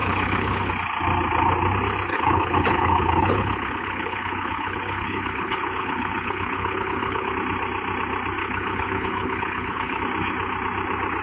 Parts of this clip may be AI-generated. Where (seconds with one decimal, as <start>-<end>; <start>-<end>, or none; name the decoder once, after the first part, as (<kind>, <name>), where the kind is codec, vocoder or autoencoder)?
0.0-0.7 (codec, HILCodec); 2.1-7.3; 8.4-10.0